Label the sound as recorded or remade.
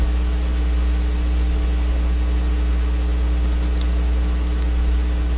recorded